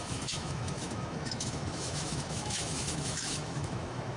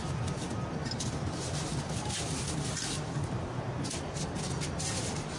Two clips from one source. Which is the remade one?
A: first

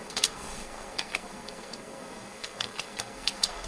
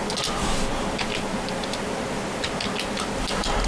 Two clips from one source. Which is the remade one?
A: first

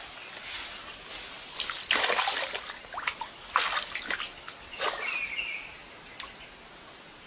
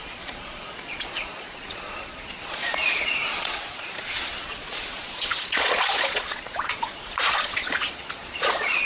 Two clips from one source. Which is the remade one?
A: second